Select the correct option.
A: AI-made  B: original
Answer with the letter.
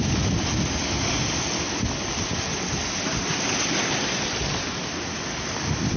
B